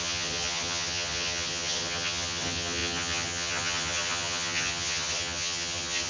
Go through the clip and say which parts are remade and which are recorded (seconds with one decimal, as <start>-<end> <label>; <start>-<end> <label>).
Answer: 0.0-6.1 remade